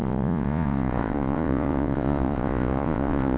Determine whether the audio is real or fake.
fake